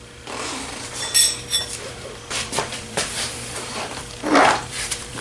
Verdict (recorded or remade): remade